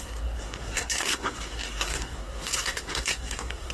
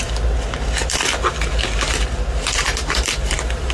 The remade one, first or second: first